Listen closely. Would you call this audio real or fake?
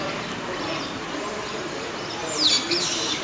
real